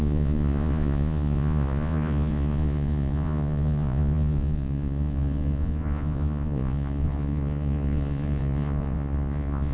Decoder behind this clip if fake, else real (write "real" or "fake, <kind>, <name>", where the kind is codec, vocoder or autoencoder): fake, vocoder, Vocos